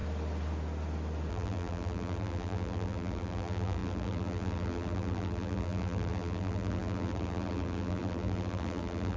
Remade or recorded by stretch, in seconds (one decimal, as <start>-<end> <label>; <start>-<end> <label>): 0.0-1.3 recorded; 1.3-9.2 remade